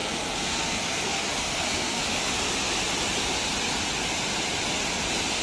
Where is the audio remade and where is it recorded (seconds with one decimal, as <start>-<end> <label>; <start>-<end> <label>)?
0.0-2.0 remade; 2.0-5.4 recorded